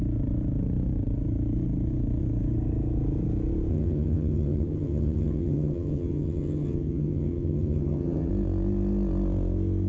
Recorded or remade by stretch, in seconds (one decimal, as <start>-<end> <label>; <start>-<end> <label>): 0.0-3.7 recorded; 3.7-8.3 remade; 8.3-9.9 recorded